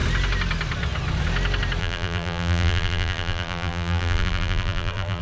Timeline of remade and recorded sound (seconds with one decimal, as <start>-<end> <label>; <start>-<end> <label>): 0.0-1.8 recorded; 1.8-5.2 remade

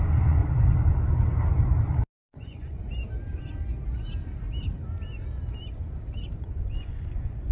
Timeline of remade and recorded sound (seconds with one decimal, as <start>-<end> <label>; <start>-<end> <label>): 0.0-0.4 remade; 0.4-2.1 recorded; 2.1-2.8 remade; 2.8-6.3 recorded; 6.3-7.5 remade

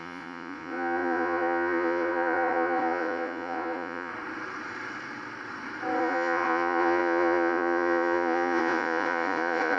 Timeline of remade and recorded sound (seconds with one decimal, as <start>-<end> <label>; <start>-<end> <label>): 0.0-4.1 remade; 4.1-6.0 recorded; 6.0-9.8 remade

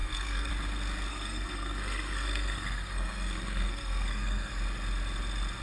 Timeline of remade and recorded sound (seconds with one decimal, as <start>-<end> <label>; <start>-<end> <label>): 0.0-0.5 remade; 0.5-1.1 recorded; 1.1-4.5 remade; 4.5-5.6 recorded